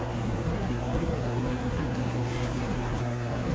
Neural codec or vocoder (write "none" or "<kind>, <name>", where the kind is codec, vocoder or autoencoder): codec, SNAC